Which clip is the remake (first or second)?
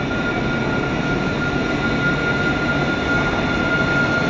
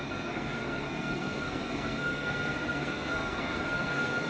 second